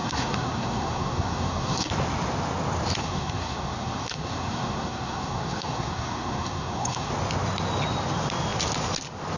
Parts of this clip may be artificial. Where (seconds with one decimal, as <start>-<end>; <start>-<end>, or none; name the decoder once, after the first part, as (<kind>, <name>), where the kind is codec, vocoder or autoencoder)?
0.0-1.9 (codec, SNAC); 3.0-7.1